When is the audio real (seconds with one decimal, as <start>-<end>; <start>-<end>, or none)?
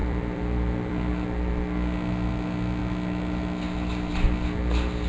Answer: 1.5-5.1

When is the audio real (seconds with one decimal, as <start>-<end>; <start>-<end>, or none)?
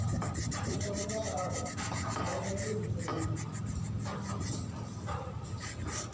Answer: 0.0-6.1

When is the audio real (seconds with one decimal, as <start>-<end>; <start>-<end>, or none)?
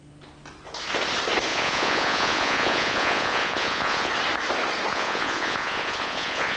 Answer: 0.0-1.5; 4.1-4.9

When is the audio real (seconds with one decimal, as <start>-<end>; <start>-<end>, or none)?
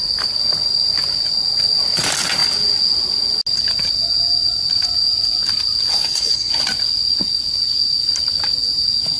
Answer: 0.0-5.9; 6.5-9.2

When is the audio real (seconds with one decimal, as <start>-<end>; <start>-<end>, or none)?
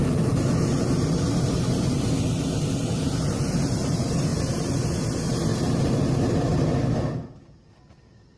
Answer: 0.0-4.3; 5.0-5.5; 6.7-8.4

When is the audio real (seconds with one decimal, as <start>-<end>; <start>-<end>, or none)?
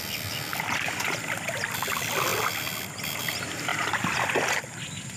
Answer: 0.0-0.5; 1.9-3.7; 4.4-5.2